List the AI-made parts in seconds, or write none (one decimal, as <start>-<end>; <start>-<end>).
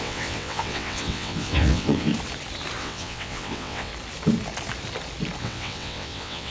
0.0-2.1; 2.8-3.9; 5.4-6.5